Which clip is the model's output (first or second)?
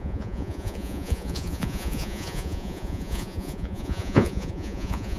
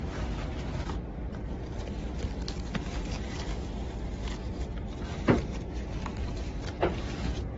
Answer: first